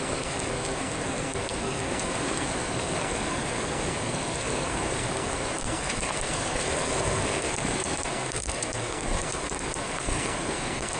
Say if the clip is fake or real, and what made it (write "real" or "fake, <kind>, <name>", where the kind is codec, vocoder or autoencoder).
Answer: fake, codec, SNAC